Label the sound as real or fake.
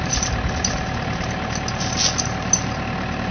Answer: real